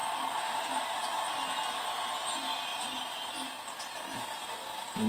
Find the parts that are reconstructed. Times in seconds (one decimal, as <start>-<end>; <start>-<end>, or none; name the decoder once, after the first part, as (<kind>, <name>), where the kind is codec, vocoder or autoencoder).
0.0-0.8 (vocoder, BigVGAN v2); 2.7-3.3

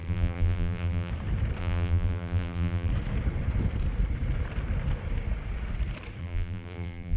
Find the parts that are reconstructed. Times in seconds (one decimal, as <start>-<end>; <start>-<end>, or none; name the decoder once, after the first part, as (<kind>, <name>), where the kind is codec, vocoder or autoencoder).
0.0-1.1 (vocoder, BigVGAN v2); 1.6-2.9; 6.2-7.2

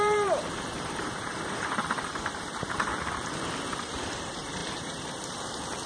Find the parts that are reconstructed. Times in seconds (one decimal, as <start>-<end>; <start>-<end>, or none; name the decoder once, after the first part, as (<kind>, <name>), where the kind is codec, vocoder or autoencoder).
0.0-2.9 (vocoder, BigVGAN v2); 3.8-5.9